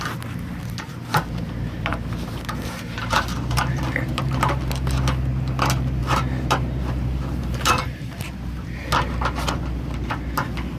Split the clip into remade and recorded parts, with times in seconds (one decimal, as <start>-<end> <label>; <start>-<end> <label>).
0.0-1.9 recorded; 1.9-4.7 remade; 4.7-6.0 recorded; 6.0-8.1 remade; 8.1-10.8 recorded